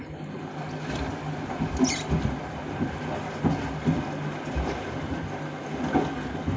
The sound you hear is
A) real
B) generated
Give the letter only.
A